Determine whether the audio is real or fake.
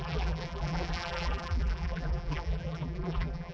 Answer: fake